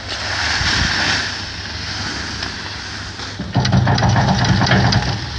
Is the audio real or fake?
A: real